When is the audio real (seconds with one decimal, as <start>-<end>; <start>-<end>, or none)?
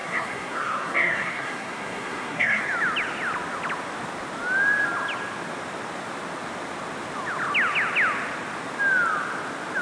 2.6-9.8